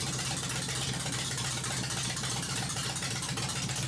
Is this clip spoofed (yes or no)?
no